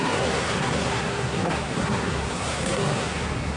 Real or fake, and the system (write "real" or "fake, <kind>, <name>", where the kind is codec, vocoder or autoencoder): fake, codec, SNAC